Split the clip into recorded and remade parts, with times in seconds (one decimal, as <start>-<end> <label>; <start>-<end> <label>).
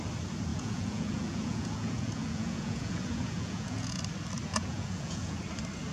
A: 0.0-0.5 recorded; 0.5-4.0 remade; 4.0-4.5 recorded; 4.5-5.4 remade; 5.4-5.9 recorded